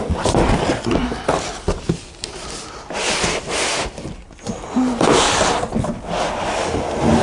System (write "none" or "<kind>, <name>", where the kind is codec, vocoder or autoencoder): none